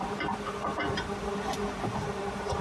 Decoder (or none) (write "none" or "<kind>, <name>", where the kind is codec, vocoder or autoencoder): vocoder, BigVGAN v2